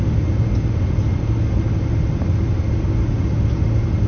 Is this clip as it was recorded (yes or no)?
yes